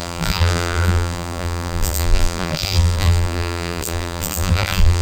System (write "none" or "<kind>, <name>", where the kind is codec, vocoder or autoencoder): vocoder, BigVGAN v2